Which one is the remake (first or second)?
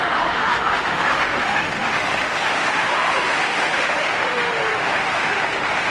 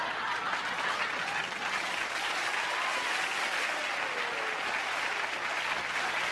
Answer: first